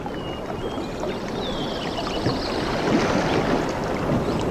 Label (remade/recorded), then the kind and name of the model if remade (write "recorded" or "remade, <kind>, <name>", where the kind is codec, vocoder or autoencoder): recorded